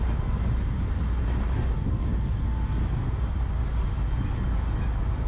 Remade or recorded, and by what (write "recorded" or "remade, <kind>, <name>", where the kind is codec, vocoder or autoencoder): recorded